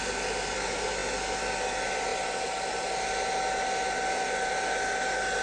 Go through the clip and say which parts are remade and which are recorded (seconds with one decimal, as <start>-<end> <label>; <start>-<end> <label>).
0.0-5.4 recorded